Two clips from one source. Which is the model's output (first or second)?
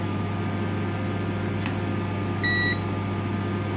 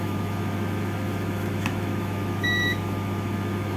second